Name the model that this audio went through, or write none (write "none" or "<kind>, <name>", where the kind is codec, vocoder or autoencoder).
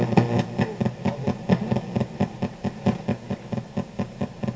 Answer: none